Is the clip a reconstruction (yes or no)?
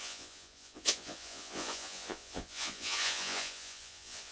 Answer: yes